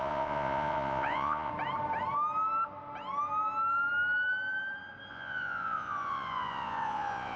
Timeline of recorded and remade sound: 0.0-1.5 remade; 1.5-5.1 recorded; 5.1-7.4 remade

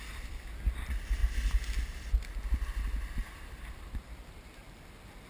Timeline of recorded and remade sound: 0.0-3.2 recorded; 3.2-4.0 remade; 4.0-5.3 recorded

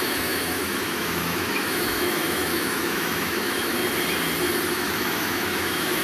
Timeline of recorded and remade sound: 0.0-3.8 remade; 3.8-4.7 recorded; 4.7-6.0 remade

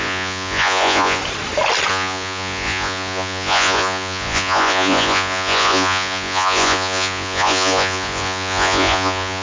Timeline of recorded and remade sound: 0.0-1.2 remade; 1.2-1.9 recorded; 1.9-9.4 remade

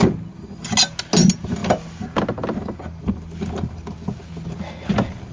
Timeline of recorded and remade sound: 0.0-5.3 recorded

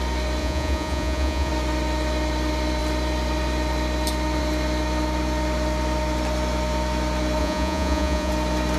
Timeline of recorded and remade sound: 0.0-0.4 recorded; 0.4-1.5 remade; 1.5-7.4 recorded; 7.4-8.3 remade; 8.3-8.8 recorded

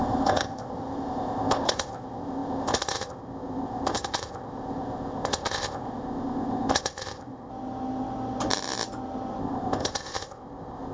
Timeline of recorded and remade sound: 0.0-7.5 remade; 7.5-9.4 recorded; 9.4-10.9 remade

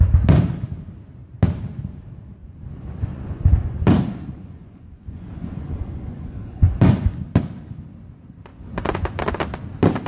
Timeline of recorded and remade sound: 0.0-2.4 recorded; 2.4-7.2 remade; 7.2-8.5 recorded; 8.5-9.2 remade; 9.2-10.1 recorded